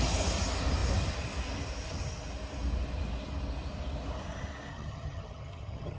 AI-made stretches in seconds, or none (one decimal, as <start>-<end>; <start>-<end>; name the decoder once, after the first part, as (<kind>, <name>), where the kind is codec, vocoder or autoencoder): 4.7-6.0 (vocoder, HiFi-GAN)